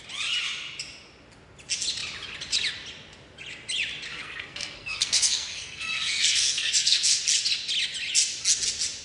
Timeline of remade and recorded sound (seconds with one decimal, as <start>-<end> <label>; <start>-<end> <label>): 0.0-4.1 recorded; 4.1-7.2 remade; 7.2-9.0 recorded